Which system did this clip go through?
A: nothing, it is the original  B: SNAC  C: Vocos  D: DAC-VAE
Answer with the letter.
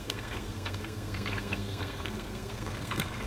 B